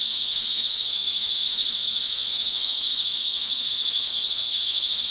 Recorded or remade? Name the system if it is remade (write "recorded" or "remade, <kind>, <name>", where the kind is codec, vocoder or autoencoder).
remade, codec, SNAC